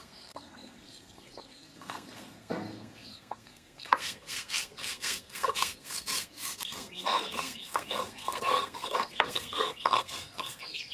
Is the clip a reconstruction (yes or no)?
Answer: yes